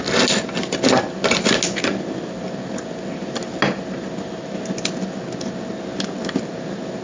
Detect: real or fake real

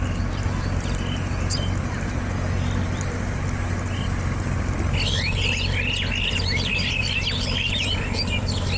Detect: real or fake real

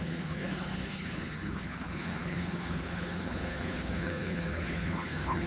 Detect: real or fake fake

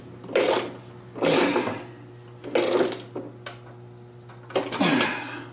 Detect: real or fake real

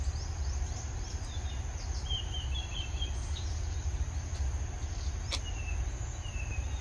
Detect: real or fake real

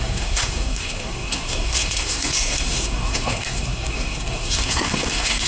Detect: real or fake fake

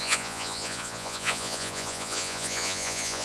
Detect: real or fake fake